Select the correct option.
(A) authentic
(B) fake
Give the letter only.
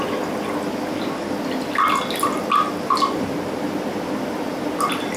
A